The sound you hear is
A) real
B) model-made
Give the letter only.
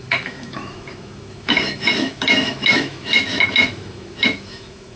B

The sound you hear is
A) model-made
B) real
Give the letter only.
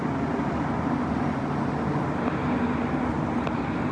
B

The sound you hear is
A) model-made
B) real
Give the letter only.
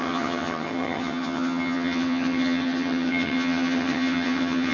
A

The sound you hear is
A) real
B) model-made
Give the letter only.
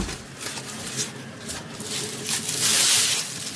A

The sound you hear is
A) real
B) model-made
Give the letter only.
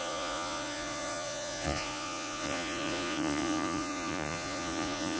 B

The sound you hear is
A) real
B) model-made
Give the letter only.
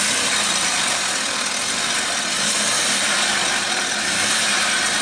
A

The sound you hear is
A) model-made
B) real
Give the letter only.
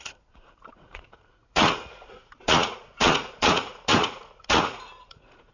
A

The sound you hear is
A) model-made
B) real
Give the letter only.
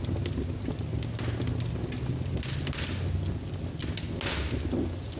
B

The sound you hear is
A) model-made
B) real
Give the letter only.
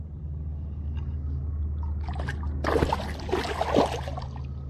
B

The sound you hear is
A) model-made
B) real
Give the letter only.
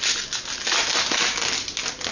B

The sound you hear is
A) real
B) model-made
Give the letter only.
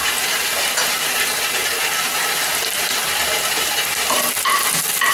A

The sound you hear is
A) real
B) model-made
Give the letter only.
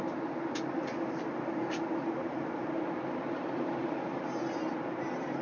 A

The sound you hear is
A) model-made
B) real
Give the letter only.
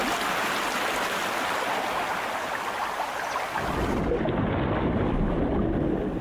B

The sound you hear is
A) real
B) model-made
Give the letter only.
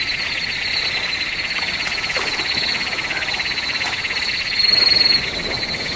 A